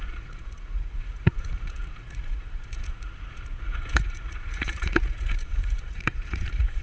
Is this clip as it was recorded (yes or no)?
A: no